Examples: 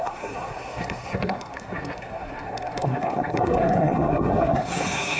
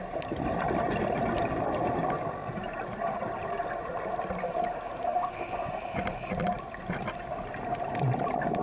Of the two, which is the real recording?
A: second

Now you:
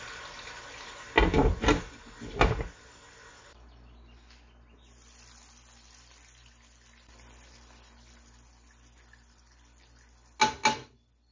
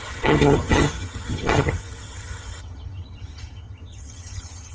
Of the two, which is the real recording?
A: first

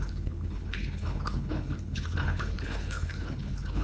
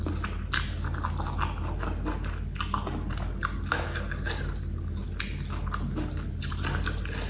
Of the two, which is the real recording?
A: second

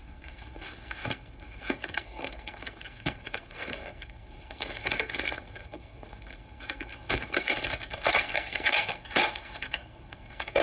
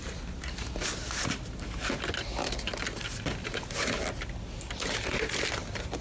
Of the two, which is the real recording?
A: second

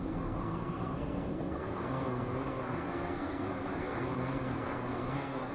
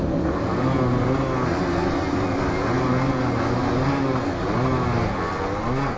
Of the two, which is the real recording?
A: second